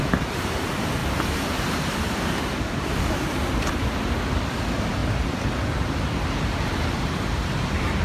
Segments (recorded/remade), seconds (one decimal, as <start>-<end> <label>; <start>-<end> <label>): 0.0-3.4 remade; 3.4-4.5 recorded; 4.5-5.0 remade; 5.0-6.0 recorded; 6.0-8.0 remade